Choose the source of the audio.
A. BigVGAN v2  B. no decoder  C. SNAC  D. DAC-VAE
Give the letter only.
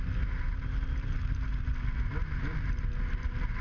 B